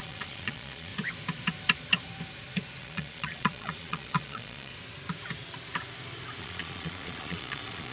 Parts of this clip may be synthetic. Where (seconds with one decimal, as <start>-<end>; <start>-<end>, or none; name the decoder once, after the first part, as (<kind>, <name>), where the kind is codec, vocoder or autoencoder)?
0.0-0.9 (vocoder, Vocos); 2.8-4.7; 6.4-7.9